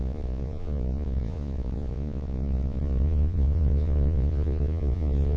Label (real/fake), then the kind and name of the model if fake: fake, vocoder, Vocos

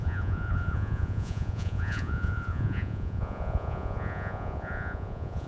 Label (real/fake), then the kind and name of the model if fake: fake, vocoder, Vocos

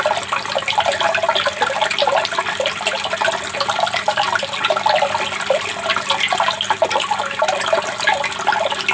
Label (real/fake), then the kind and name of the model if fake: real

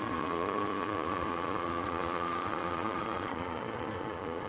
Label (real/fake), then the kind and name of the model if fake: fake, vocoder, Vocos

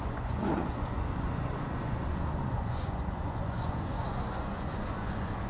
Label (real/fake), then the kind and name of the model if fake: fake, vocoder, Vocos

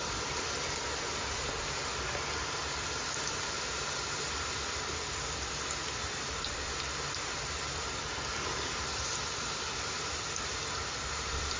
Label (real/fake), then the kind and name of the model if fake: real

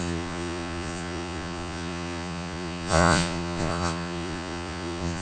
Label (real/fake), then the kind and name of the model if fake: fake, vocoder, Vocos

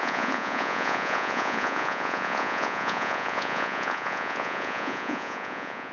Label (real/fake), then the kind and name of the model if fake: fake, vocoder, Vocos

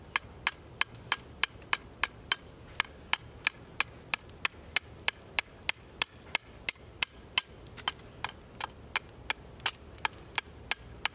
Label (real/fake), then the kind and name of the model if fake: real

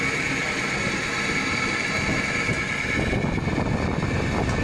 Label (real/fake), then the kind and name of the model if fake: real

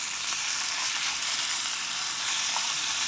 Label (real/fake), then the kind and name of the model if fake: real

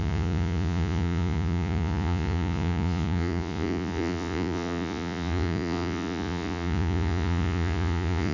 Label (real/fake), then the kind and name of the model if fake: fake, vocoder, Vocos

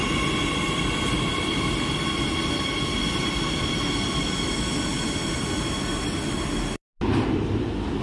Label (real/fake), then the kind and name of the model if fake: real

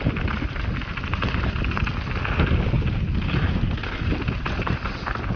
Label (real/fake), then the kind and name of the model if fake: real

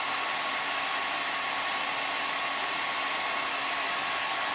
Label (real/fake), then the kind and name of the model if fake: real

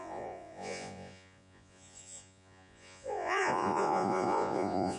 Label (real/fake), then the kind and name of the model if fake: fake, vocoder, Vocos